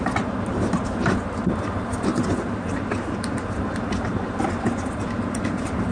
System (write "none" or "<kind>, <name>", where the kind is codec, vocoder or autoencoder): none